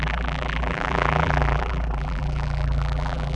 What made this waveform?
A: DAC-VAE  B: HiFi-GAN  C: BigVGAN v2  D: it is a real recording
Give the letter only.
C